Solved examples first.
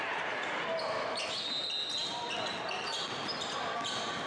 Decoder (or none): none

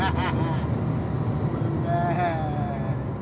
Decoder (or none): none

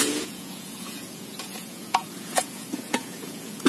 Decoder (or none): vocoder, Vocos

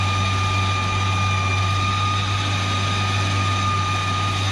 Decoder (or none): none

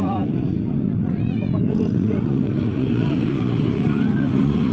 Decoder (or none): vocoder, Vocos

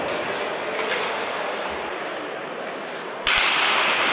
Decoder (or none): none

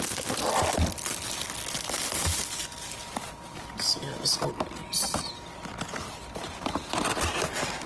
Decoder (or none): none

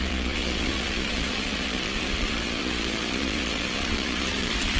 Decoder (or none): vocoder, Vocos